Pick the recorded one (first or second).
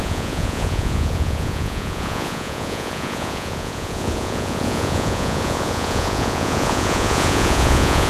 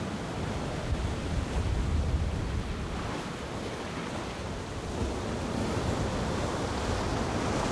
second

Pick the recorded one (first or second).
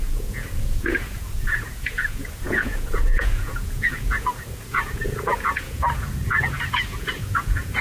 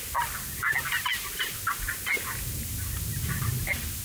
second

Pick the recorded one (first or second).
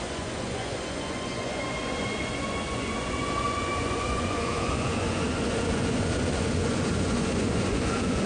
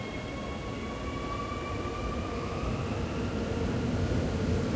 second